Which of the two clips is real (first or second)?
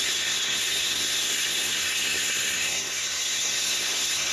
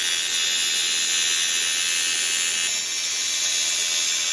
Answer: second